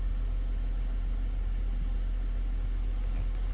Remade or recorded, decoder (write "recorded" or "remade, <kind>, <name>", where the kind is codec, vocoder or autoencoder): recorded